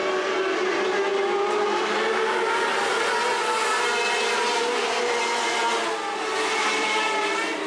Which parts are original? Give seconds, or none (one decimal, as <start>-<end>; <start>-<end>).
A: 0.6-1.1; 3.1-4.6; 5.2-6.8